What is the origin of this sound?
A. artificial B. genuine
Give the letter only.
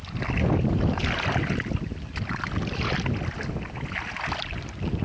B